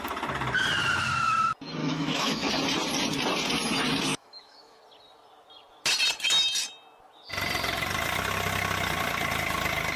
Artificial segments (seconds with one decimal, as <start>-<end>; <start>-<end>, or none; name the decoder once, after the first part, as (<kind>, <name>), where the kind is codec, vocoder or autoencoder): 1.8-2.5 (autoencoder, DAC-VAE); 4.1-4.8